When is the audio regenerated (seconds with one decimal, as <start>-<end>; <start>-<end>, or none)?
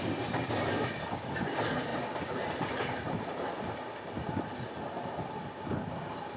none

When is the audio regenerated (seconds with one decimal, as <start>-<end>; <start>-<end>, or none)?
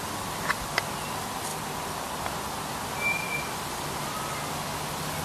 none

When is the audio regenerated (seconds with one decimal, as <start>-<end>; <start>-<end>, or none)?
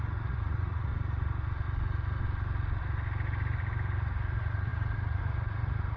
0.0-0.9; 4.1-6.0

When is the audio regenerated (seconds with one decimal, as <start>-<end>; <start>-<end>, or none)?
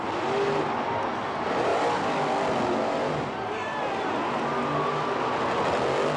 none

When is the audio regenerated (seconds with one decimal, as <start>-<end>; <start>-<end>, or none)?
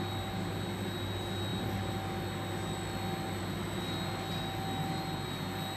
none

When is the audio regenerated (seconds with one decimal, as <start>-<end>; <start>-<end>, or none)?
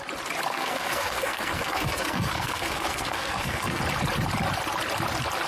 0.5-3.8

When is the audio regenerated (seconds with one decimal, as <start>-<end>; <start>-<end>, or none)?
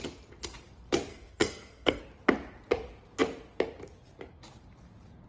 1.1-2.0